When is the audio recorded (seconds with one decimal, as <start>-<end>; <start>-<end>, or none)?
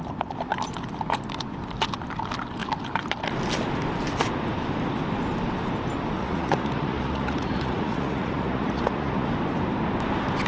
0.0-6.2; 9.3-10.5